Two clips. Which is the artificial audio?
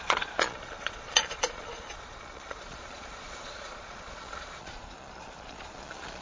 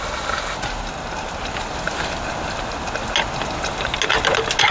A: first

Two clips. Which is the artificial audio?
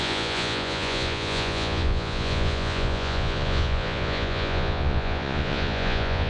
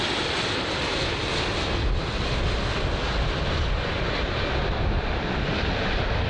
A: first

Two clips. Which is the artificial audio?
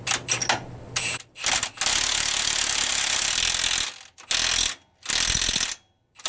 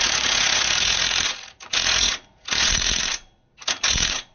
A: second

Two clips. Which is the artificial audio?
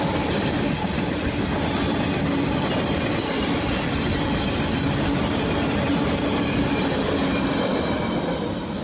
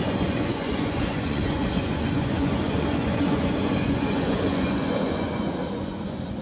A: second